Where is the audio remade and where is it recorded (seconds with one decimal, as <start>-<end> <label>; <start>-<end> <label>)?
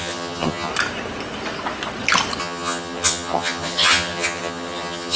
0.0-0.7 remade; 0.7-2.4 recorded; 2.4-5.2 remade